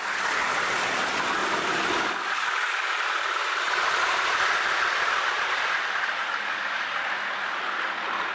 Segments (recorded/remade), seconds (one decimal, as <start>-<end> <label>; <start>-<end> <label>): 0.0-8.3 recorded